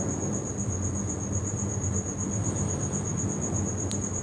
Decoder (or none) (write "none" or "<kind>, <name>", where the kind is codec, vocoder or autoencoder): none